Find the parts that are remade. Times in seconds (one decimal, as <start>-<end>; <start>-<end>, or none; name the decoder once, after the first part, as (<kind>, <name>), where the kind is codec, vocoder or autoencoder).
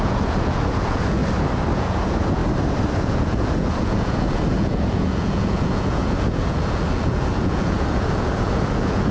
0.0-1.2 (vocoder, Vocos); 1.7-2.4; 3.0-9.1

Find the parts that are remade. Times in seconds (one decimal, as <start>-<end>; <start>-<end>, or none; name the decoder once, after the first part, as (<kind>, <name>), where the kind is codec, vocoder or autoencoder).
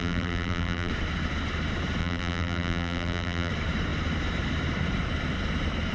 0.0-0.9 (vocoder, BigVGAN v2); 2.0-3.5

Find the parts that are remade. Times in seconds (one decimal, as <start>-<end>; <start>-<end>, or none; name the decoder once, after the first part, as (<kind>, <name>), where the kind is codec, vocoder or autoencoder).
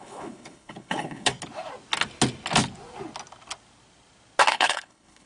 0.0-1.3 (codec, HILCodec); 4.5-5.3